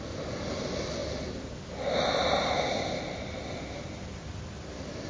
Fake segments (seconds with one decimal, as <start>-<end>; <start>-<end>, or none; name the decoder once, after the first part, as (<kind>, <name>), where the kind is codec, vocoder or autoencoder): none